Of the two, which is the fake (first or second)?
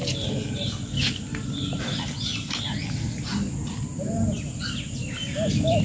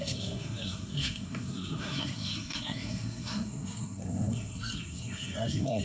second